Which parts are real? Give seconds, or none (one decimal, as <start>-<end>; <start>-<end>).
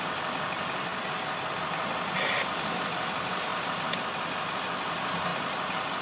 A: 0.0-6.0